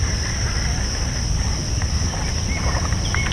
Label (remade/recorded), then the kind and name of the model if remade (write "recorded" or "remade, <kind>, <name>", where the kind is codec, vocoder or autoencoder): recorded